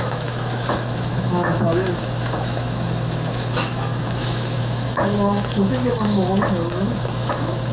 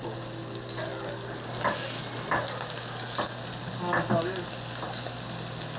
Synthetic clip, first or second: first